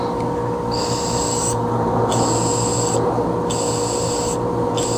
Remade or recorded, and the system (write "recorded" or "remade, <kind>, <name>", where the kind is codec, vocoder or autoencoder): recorded